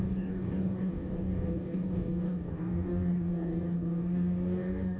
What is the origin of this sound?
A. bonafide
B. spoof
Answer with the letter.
B